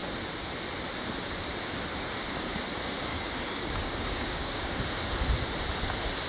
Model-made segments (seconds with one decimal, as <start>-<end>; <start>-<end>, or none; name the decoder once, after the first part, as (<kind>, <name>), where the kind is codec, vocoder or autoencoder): 3.1-5.0 (codec, DAC)